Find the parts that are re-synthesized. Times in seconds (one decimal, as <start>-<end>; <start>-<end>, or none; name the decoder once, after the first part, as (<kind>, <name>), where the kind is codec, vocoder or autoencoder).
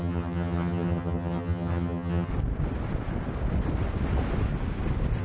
0.0-2.3 (vocoder, HiFi-GAN)